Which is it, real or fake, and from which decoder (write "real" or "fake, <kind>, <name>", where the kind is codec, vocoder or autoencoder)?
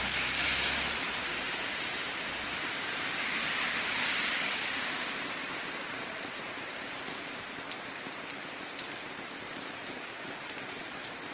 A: fake, vocoder, BigVGAN v2